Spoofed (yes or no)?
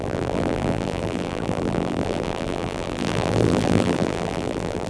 yes